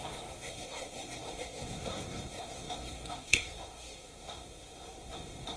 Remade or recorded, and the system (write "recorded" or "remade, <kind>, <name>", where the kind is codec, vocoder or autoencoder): remade, codec, SNAC